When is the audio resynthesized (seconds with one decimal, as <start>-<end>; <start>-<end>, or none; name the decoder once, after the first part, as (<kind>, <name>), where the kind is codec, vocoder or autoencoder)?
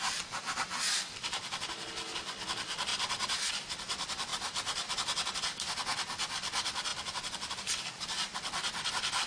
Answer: 2.9-3.5 (vocoder, BigVGAN v2); 4.3-5.5